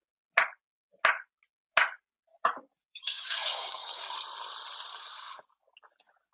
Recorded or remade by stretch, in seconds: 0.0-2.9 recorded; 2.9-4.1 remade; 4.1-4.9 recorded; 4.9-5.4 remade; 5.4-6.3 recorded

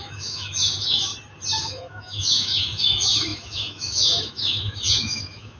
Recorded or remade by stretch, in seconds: 0.0-1.1 remade; 1.1-1.6 recorded; 1.6-5.6 remade

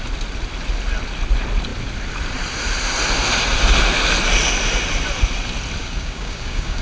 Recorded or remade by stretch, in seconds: 0.0-5.8 recorded; 5.8-6.8 remade

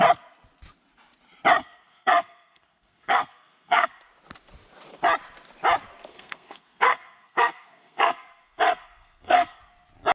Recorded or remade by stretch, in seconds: 0.0-1.6 recorded; 1.6-4.0 remade; 4.0-6.1 recorded; 6.1-9.6 remade; 9.6-10.1 recorded

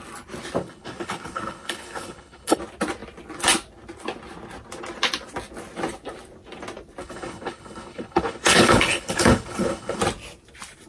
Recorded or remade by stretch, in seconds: 0.0-0.6 recorded; 0.6-2.6 remade; 2.6-7.0 recorded; 7.0-10.0 remade; 10.0-10.9 recorded